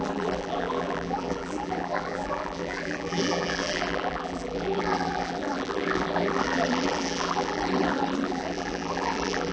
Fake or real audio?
fake